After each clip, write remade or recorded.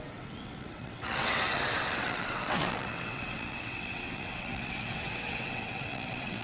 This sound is remade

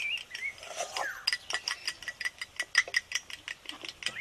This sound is recorded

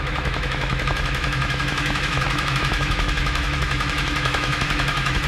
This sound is remade